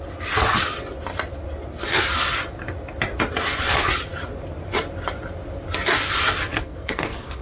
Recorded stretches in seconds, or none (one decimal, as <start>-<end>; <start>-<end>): 0.0-6.6